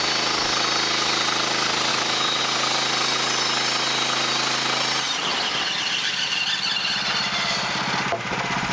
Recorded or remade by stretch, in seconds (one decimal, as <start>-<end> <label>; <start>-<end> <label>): 0.0-1.9 recorded; 1.9-2.4 remade; 2.4-8.7 recorded